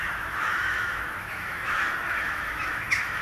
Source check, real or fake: fake